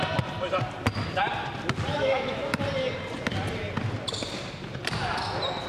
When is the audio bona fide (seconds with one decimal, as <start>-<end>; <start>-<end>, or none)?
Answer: 0.0-1.9; 2.4-5.7